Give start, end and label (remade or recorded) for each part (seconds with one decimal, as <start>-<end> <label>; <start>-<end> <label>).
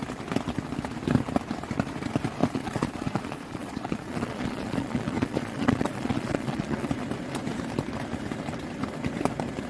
0.0-2.4 recorded; 2.4-6.9 remade; 6.9-9.7 recorded